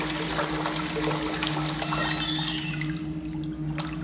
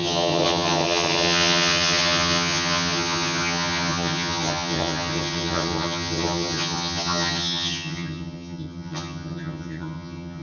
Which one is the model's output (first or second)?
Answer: second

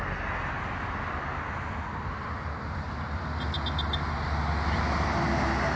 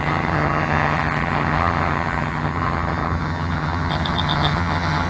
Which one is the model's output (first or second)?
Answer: second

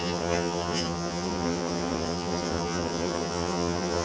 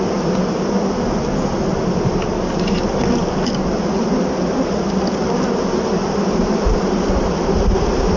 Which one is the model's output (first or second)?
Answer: first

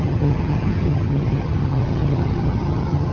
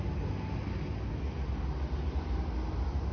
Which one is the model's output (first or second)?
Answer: first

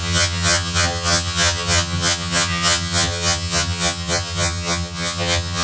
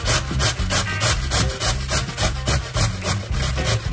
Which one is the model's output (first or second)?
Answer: first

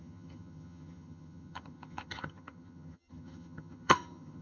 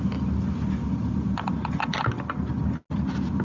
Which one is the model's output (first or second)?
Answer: first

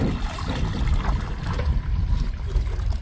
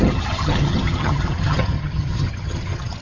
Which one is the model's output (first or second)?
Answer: second